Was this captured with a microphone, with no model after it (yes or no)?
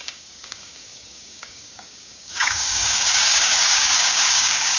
no